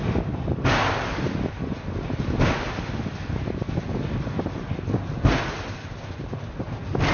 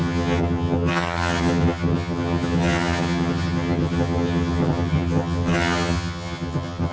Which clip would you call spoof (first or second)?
second